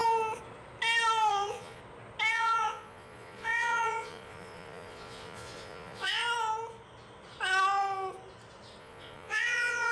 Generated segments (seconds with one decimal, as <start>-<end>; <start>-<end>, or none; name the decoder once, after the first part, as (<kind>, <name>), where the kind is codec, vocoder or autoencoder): 1.3-1.8 (vocoder, Vocos); 2.3-6.2; 8.8-9.9